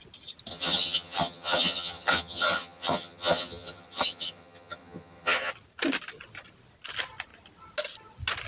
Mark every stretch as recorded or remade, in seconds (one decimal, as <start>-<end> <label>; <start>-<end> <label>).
0.0-0.5 recorded; 0.5-5.5 remade; 5.5-8.5 recorded

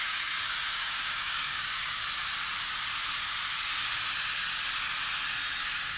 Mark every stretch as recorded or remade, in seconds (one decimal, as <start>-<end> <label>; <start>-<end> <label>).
0.0-2.0 remade; 2.0-5.6 recorded; 5.6-6.0 remade

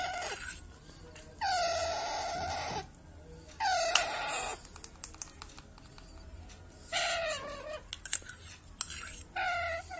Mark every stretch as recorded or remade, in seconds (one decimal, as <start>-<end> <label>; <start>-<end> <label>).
0.0-10.0 recorded

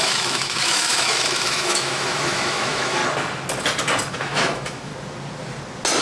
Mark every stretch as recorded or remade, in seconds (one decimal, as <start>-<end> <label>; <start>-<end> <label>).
0.0-3.0 remade; 3.0-4.1 recorded; 4.1-4.9 remade; 4.9-6.0 recorded

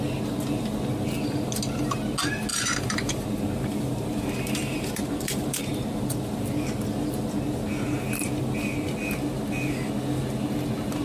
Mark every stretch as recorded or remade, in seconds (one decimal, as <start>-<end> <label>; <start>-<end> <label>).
0.0-2.5 recorded; 2.5-5.7 remade; 5.7-11.0 recorded

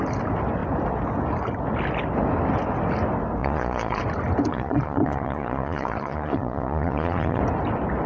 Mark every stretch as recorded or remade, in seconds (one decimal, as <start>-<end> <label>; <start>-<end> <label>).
0.0-3.4 recorded; 3.4-4.0 remade; 4.0-4.5 recorded; 4.5-7.4 remade; 7.4-8.1 recorded